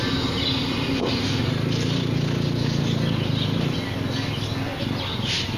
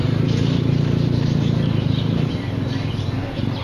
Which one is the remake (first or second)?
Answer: second